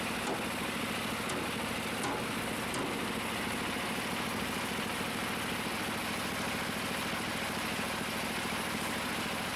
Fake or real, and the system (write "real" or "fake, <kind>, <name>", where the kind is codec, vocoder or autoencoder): real